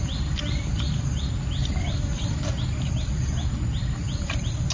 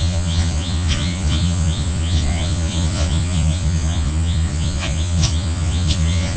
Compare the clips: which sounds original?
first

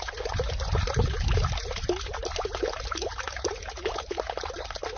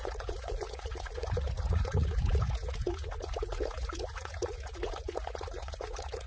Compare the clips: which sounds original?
first